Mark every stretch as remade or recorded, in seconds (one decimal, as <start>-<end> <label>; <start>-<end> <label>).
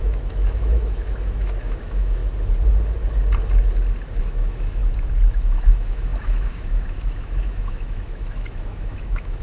0.0-2.2 remade; 2.2-4.2 recorded; 4.2-4.8 remade; 4.8-5.3 recorded; 5.3-9.4 remade